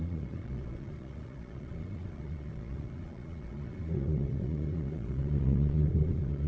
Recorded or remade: remade